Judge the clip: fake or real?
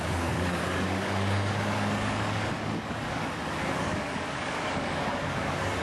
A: fake